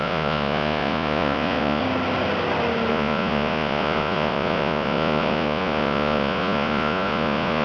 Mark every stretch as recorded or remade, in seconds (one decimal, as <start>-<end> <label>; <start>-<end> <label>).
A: 0.0-1.8 remade; 1.8-2.9 recorded; 2.9-7.6 remade